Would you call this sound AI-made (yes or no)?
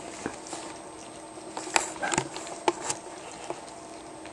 no